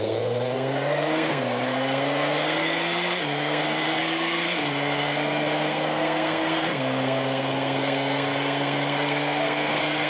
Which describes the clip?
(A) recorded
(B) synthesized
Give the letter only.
B